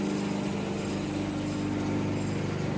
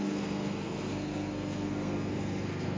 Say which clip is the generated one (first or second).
second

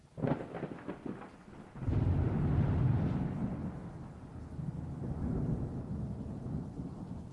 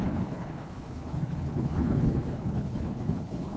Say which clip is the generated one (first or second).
second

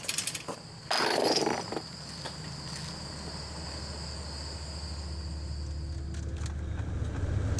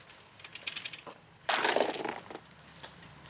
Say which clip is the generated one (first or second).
second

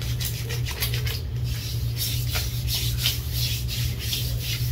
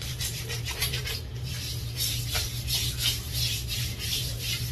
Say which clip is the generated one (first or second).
second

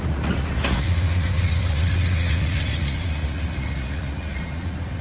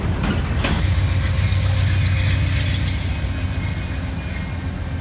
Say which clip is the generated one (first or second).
first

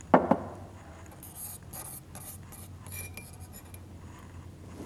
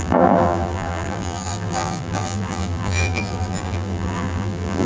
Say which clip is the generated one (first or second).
second